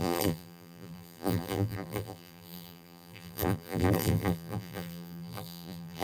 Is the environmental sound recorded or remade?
remade